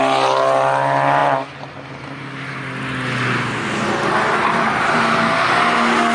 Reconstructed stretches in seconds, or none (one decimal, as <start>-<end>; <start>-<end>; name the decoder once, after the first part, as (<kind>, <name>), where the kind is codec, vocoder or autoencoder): none